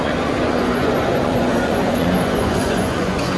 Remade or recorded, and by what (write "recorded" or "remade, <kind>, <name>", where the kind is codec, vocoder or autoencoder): remade, vocoder, Vocos